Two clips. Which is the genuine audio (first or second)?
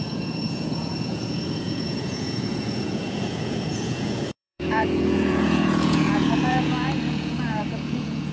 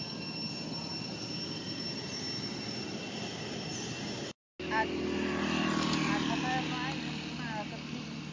second